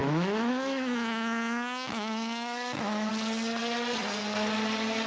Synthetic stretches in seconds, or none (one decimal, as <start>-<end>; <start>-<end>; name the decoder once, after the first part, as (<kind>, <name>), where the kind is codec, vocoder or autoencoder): 0.0-3.1 (autoencoder, DAC-VAE)